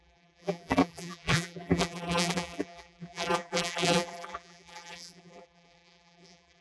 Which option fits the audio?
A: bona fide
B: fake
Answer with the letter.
B